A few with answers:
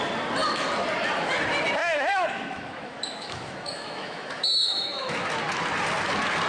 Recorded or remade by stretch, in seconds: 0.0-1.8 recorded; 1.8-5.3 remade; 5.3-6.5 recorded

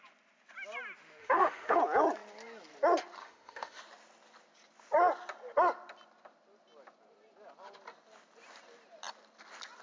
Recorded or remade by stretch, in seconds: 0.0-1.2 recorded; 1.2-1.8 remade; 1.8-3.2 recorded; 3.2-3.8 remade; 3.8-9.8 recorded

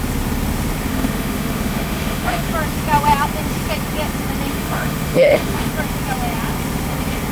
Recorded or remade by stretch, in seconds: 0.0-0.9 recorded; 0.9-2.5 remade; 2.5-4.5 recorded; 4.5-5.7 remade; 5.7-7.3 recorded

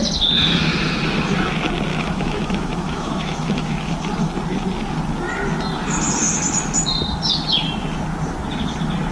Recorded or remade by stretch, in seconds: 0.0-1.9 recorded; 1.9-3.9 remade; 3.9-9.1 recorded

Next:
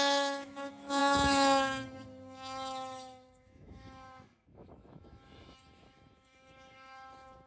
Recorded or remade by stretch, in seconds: 0.0-7.5 remade